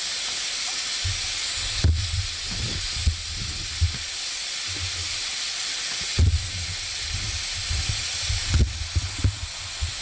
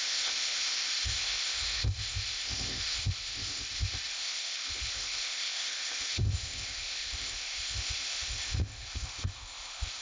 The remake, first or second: second